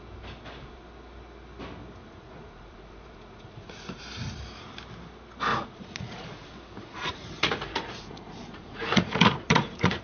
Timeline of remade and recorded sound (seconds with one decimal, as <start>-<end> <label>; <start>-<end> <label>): 0.0-2.0 recorded; 2.0-4.0 remade; 4.0-5.5 recorded; 5.5-10.0 remade